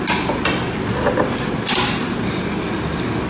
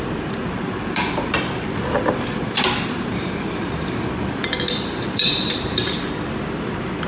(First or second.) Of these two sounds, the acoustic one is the first